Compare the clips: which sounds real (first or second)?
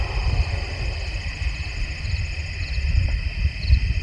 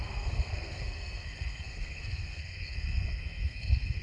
first